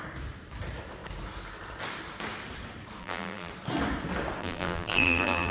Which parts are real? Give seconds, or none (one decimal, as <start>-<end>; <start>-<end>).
0.0-3.0; 3.5-4.4